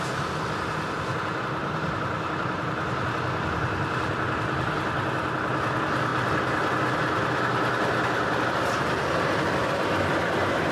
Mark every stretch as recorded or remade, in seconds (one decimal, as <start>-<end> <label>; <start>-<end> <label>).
0.0-1.6 recorded; 1.6-3.0 remade; 3.0-10.7 recorded